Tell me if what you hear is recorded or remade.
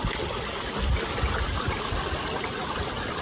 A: recorded